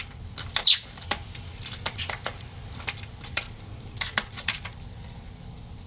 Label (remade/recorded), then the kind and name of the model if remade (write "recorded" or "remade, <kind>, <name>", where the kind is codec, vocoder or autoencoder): remade, vocoder, BigVGAN v2